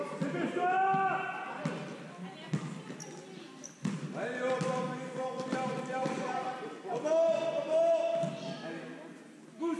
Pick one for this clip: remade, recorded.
recorded